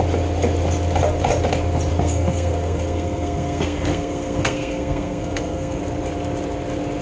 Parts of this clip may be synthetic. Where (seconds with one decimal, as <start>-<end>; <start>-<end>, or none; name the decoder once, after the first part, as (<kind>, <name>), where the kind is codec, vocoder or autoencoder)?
1.9-5.8 (codec, SNAC)